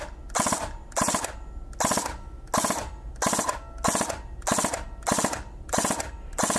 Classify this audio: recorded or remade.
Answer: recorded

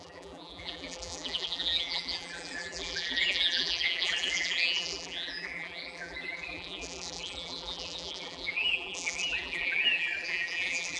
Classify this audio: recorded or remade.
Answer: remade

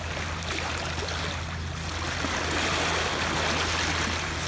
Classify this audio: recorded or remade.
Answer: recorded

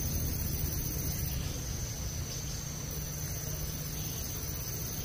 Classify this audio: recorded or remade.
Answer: recorded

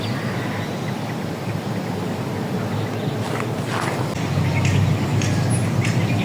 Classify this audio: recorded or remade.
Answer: remade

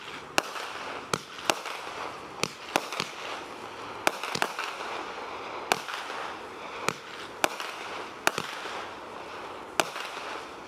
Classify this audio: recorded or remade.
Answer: recorded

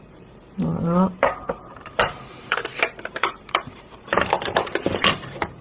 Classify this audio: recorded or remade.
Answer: remade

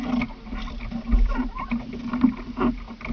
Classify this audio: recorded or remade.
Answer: recorded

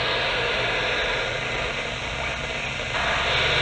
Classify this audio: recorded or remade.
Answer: recorded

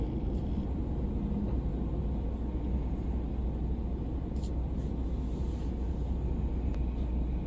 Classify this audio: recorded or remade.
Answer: recorded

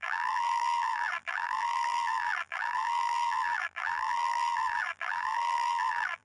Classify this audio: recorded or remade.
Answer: remade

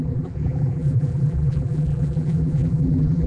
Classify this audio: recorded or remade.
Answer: remade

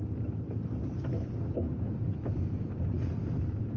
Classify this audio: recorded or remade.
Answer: remade